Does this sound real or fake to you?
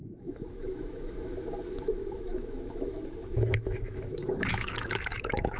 fake